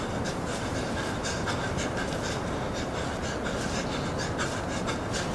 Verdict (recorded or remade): recorded